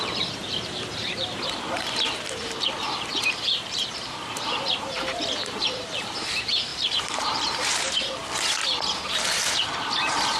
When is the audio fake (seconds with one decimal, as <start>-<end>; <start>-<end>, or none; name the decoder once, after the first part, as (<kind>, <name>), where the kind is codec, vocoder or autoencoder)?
0.0-8.2 (vocoder, BigVGAN v2); 9.3-10.4